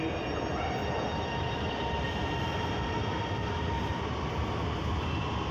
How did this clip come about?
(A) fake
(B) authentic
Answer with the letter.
B